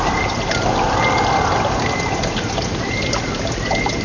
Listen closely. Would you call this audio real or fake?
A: real